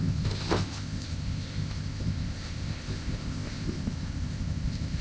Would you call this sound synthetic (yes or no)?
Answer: yes